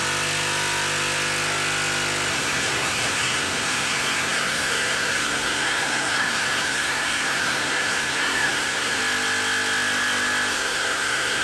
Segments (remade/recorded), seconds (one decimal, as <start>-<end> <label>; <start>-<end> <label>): 0.0-2.3 recorded; 2.3-9.0 remade; 9.0-10.5 recorded; 10.5-11.4 remade